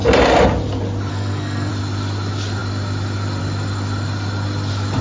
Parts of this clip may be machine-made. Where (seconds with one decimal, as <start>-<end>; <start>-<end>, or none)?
1.1-1.7